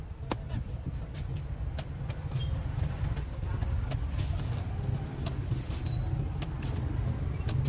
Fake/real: real